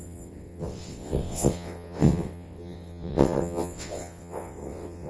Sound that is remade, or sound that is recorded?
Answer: remade